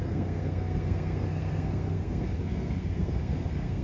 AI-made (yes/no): yes